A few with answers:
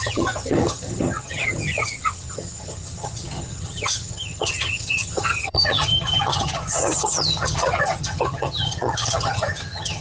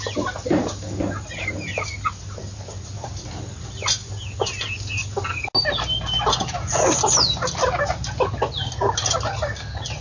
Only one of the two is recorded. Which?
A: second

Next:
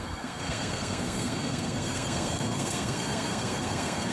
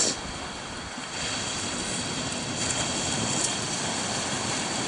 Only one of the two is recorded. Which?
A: second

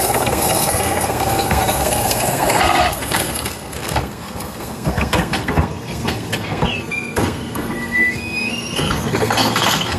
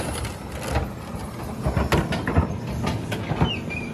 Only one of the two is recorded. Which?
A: second